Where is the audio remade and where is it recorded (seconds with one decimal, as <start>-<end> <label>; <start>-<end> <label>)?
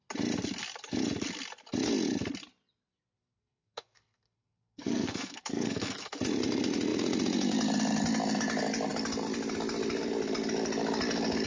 0.0-3.2 recorded; 3.2-6.2 remade; 6.2-11.5 recorded